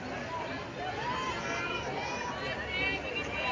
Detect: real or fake real